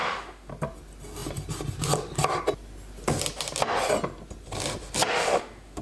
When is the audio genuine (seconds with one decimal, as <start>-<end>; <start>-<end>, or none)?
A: 0.5-5.1